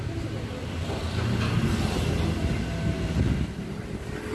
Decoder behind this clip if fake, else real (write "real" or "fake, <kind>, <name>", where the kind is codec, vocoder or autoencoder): real